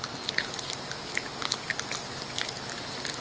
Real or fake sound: real